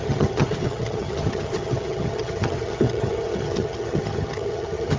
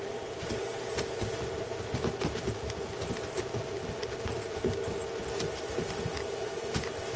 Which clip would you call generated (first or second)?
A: first